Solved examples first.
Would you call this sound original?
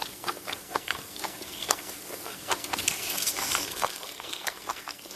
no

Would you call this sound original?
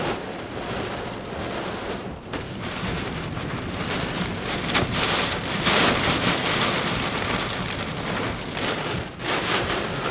yes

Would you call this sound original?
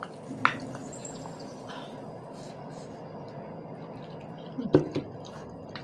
yes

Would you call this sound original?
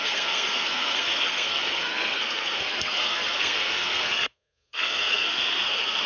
no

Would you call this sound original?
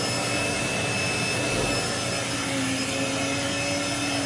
yes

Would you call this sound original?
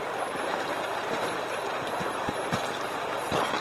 yes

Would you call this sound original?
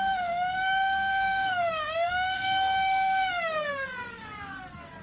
no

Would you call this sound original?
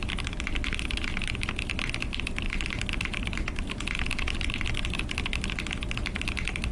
yes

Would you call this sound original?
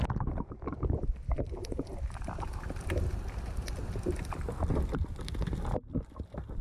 yes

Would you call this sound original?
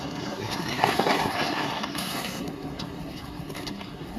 no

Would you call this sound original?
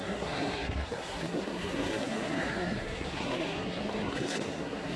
no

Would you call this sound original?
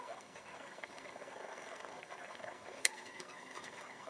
no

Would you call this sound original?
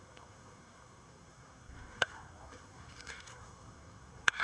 no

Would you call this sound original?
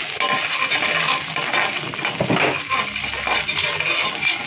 yes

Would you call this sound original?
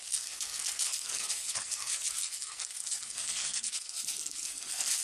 no